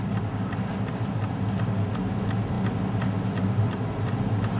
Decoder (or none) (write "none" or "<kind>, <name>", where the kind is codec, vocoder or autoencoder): none